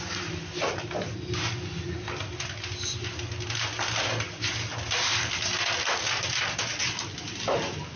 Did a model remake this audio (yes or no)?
no